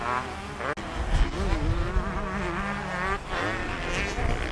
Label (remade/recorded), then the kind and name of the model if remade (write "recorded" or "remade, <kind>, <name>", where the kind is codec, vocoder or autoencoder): recorded